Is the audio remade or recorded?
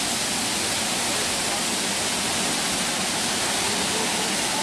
recorded